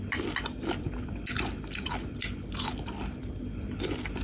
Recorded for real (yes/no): yes